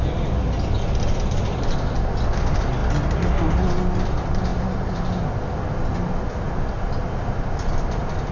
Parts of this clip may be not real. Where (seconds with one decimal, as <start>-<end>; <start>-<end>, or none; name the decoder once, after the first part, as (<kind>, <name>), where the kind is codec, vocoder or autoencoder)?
none